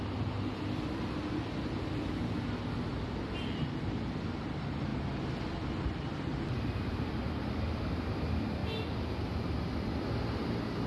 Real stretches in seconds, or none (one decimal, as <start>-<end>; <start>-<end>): 0.0-4.9; 7.0-10.9